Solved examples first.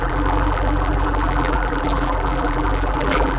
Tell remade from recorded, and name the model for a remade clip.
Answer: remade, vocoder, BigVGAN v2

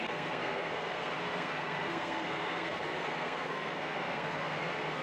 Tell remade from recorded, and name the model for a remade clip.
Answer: remade, codec, SNAC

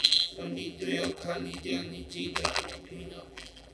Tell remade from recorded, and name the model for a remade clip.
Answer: remade, vocoder, BigVGAN v2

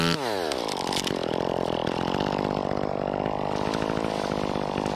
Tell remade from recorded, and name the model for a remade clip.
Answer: recorded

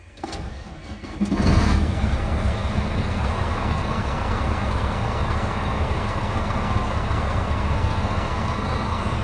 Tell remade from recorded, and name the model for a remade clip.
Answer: remade, codec, SNAC